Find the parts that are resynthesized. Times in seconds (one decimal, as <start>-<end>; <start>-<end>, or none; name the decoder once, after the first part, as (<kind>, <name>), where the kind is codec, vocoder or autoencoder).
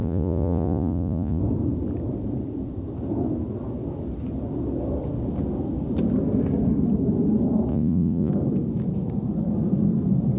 0.0-1.4 (vocoder, Vocos); 7.7-8.3